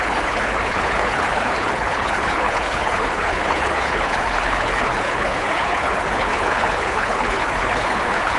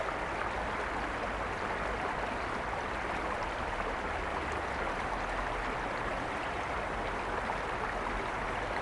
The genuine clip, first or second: second